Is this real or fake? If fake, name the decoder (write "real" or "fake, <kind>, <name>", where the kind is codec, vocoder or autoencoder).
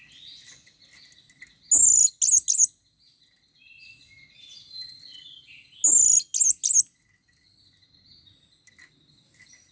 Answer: real